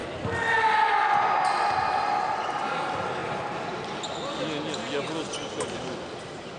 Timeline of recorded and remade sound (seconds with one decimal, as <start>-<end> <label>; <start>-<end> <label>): 0.0-6.6 recorded

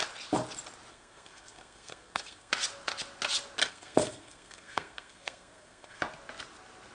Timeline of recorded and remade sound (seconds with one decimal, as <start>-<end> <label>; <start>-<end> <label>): 0.0-0.9 recorded; 0.9-2.5 remade; 2.5-3.7 recorded; 3.7-6.0 remade; 6.0-6.9 recorded

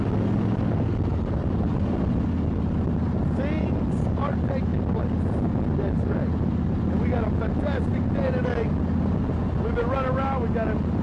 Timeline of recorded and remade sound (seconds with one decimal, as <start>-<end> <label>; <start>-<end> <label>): 0.0-11.0 recorded